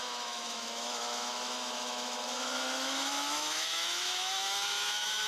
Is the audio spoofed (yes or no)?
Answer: yes